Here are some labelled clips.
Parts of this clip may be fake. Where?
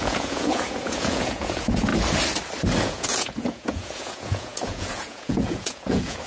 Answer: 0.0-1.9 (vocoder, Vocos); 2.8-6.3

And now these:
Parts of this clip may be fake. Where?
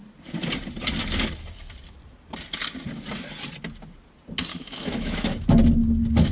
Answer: 4.5-5.3 (autoencoder, DAC-VAE)